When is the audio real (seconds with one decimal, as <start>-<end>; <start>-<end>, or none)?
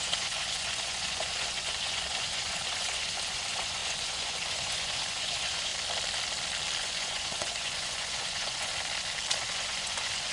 5.7-6.8; 8.7-9.4